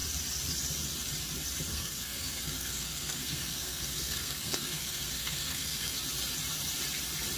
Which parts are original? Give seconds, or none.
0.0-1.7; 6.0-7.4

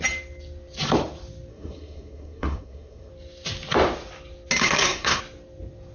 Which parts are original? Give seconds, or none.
0.0-1.5; 3.1-4.6; 5.2-5.9